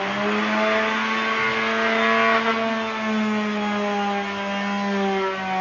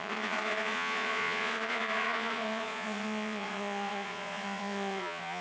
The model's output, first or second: second